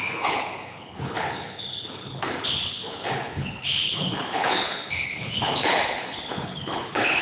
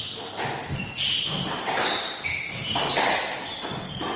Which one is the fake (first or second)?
first